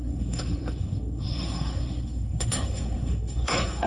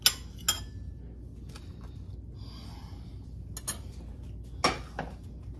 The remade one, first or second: first